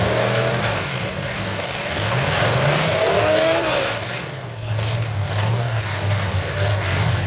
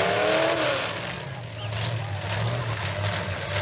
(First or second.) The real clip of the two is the second